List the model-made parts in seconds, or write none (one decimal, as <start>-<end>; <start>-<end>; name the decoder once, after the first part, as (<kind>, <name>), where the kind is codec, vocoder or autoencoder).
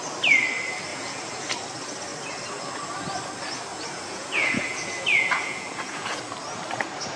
0.9-1.5 (vocoder, Vocos); 3.7-6.2